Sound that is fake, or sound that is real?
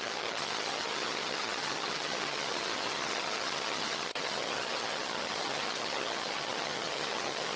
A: fake